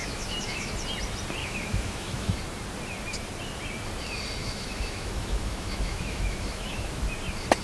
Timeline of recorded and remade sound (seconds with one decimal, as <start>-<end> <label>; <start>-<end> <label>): 0.0-0.7 remade; 0.7-1.4 recorded; 1.4-2.4 remade; 2.4-4.4 recorded; 4.4-7.0 remade; 7.0-7.6 recorded